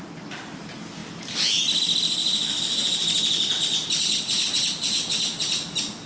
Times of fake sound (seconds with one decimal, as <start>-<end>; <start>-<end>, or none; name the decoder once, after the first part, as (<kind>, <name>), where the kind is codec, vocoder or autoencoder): none

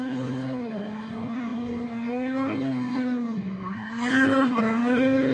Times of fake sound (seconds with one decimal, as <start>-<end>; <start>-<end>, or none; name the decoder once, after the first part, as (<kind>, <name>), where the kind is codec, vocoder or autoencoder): 0.0-5.3 (codec, SNAC)

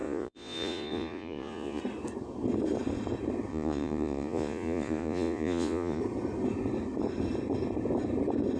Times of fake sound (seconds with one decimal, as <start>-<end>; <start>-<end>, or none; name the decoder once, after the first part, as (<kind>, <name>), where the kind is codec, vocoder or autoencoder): 0.0-1.8 (vocoder, Vocos); 3.5-6.0

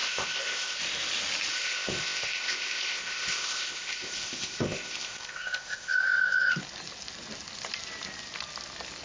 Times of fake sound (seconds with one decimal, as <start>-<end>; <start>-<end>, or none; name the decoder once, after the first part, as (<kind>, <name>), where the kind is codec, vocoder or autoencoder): 0.0-0.8 (codec, ZipCodec); 1.5-6.5

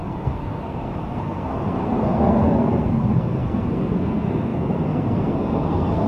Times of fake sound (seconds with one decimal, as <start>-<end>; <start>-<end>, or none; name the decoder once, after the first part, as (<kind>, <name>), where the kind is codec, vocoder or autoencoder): 0.0-6.1 (codec, SNAC)

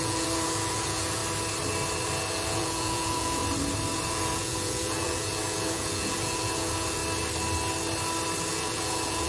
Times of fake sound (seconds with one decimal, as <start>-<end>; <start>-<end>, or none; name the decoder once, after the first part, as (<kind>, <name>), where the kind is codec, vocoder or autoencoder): 0.0-1.2 (vocoder, Vocos); 2.3-3.4; 4.1-7.0; 8.4-9.3